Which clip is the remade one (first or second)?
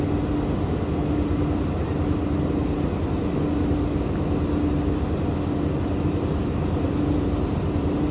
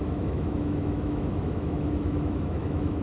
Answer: second